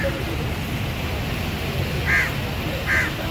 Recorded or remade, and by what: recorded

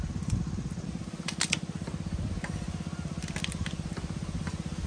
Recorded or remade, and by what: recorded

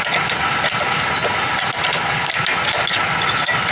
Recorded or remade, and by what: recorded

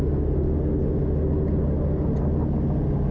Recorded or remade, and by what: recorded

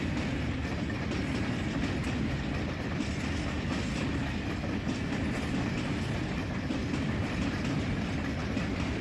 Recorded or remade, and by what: recorded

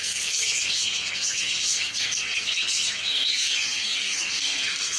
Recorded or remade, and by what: remade, codec, SNAC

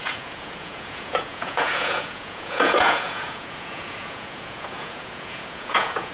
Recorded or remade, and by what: remade, vocoder, Vocos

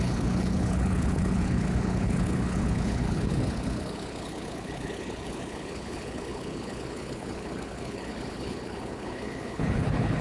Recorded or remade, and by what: remade, codec, HILCodec